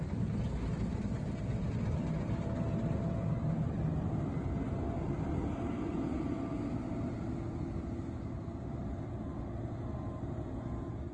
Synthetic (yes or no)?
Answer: no